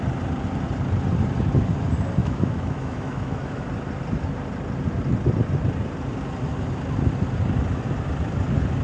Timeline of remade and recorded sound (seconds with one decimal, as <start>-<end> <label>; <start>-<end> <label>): 0.0-2.2 recorded; 2.2-3.6 remade; 3.6-8.8 recorded